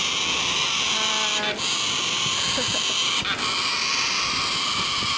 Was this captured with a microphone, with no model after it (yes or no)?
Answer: yes